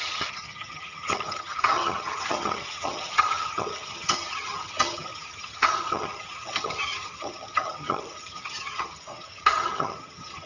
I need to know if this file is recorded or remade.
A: remade